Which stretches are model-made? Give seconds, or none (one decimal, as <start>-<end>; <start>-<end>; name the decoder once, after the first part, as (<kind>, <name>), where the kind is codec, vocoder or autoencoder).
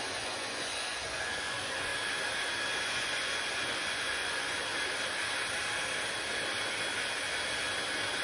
0.0-1.9 (vocoder, Vocos); 2.8-4.6